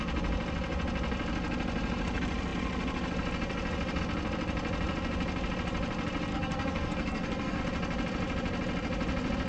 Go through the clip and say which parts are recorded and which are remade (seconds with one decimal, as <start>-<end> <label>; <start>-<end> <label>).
0.0-6.3 recorded; 6.3-7.6 remade; 7.6-9.5 recorded